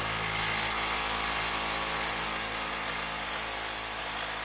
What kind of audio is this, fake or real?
real